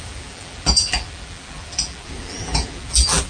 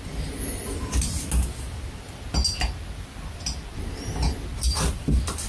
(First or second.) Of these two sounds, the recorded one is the second